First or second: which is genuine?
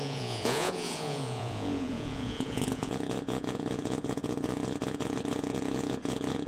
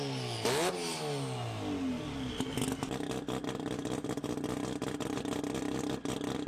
second